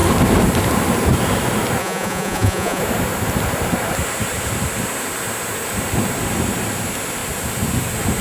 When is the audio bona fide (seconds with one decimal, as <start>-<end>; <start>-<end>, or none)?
0.0-1.8; 2.8-8.2